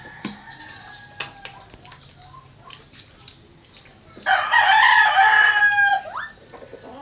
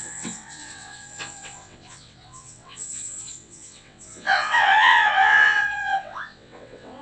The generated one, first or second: second